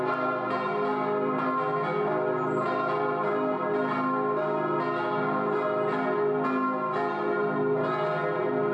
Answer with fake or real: real